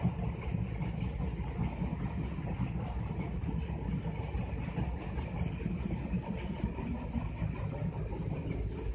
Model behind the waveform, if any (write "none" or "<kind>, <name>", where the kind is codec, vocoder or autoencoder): none